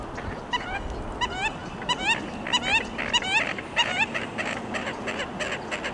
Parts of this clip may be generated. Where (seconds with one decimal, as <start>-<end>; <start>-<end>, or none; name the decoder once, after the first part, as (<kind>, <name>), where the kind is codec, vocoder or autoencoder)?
3.5-5.0 (vocoder, BigVGAN v2)